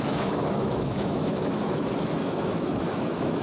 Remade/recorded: remade